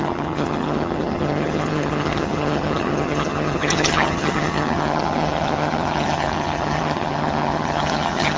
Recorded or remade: remade